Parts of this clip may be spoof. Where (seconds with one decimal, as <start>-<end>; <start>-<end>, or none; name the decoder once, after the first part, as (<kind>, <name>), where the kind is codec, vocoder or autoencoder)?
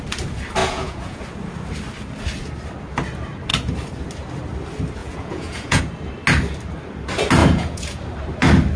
0.6-1.2 (vocoder, Vocos); 5.0-5.8; 7.4-8.0